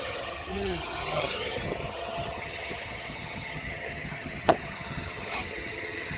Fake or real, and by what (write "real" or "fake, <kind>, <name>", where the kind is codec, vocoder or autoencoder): fake, vocoder, HiFi-GAN